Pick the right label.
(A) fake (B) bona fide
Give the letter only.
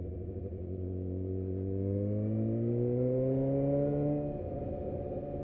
B